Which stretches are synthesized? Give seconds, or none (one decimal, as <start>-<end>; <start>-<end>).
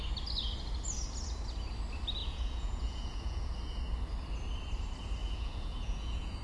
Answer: 2.2-3.8; 5.2-6.4